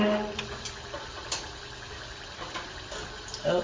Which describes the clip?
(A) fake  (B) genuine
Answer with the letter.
B